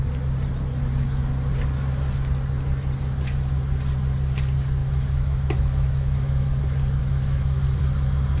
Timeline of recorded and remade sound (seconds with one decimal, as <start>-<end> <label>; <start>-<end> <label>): 0.0-4.8 recorded; 4.8-6.6 remade; 6.6-7.0 recorded; 7.0-7.8 remade; 7.8-8.4 recorded